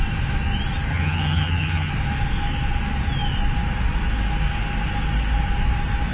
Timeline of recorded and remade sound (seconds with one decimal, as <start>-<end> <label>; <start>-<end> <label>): 0.0-0.9 recorded; 0.9-1.9 remade; 1.9-6.1 recorded